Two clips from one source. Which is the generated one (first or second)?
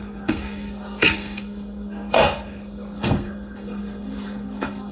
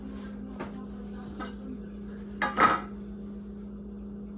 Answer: first